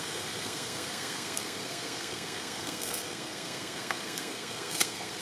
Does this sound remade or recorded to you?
remade